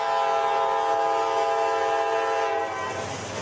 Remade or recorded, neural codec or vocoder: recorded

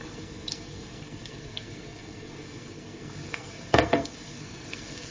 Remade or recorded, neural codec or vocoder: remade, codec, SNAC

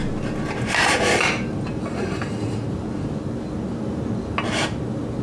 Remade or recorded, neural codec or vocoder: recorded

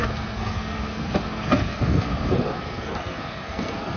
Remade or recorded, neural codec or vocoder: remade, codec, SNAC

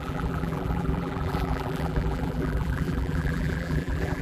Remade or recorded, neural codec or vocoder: remade, vocoder, BigVGAN v2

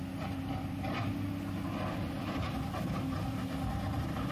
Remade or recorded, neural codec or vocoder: recorded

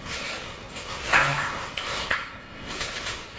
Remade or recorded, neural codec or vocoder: remade, codec, SNAC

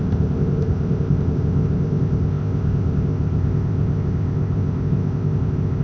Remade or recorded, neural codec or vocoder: remade, codec, ZipCodec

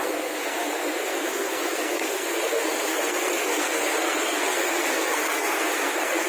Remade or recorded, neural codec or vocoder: remade, codec, SNAC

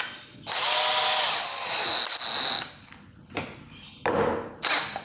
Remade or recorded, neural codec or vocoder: recorded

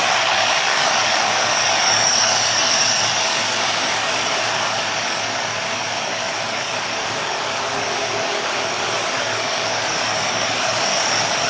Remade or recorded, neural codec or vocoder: remade, codec, DAC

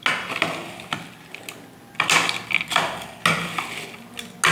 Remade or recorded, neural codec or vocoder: recorded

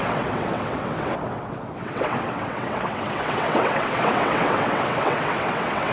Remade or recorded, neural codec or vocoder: remade, vocoder, WaveNeXt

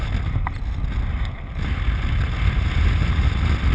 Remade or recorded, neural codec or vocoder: recorded